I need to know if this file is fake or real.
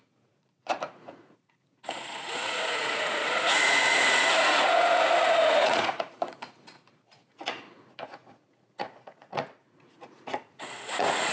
fake